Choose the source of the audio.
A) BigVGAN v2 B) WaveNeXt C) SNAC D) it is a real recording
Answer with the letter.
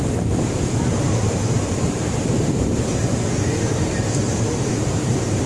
A